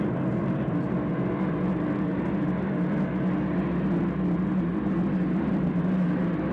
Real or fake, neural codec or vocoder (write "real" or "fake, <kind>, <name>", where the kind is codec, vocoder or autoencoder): real